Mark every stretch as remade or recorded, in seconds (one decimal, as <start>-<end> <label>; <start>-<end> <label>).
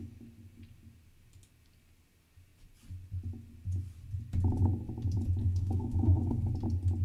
0.0-5.4 recorded; 5.4-6.5 remade; 6.5-7.0 recorded